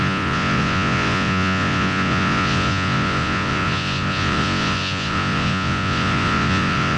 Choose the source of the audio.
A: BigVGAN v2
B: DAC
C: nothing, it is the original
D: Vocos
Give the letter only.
D